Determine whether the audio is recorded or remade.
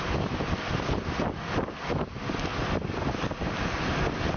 recorded